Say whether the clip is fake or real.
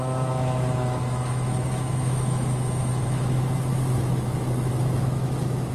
fake